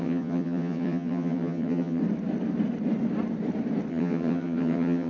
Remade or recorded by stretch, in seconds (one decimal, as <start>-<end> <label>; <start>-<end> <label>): 0.0-2.0 remade; 2.0-3.9 recorded; 3.9-5.1 remade

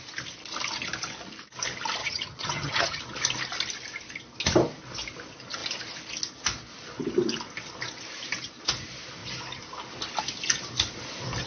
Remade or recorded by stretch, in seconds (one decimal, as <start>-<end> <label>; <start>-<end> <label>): 0.0-2.0 recorded; 2.0-3.0 remade; 3.0-11.5 recorded

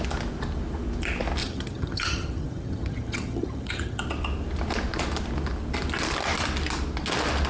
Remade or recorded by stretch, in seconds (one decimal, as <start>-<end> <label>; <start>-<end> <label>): 0.0-1.4 recorded; 1.4-4.0 remade; 4.0-7.5 recorded

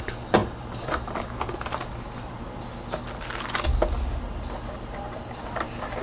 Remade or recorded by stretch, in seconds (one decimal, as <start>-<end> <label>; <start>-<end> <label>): 0.0-6.0 recorded

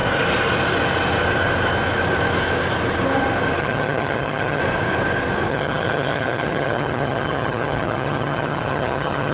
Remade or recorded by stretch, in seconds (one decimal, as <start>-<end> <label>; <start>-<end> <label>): 0.0-3.6 recorded; 3.6-4.6 remade; 4.6-5.5 recorded; 5.5-9.3 remade

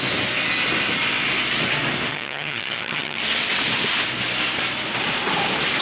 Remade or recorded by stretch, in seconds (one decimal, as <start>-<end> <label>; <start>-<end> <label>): 0.0-2.1 recorded; 2.1-3.2 remade; 3.2-5.8 recorded